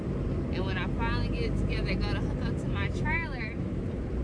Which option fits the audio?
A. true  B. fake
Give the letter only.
A